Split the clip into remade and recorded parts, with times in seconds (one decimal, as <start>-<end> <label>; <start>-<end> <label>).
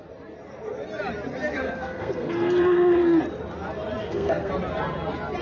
0.0-1.5 recorded; 1.5-3.2 remade; 3.2-4.0 recorded; 4.0-4.5 remade; 4.5-5.4 recorded